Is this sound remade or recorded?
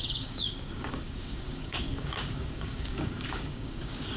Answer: remade